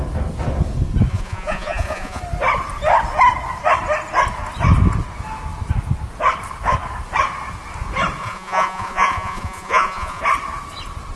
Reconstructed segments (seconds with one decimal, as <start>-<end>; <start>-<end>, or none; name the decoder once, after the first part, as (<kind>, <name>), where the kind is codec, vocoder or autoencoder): 1.1-2.2 (vocoder, Vocos); 8.2-10.2